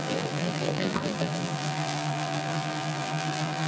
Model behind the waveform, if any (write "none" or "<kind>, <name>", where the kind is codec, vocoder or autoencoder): vocoder, BigVGAN v2